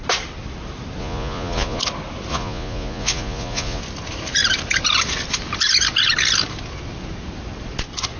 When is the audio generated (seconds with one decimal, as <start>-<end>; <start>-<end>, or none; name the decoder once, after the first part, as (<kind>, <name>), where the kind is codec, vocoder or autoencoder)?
1.0-1.8 (vocoder, Vocos); 2.3-3.8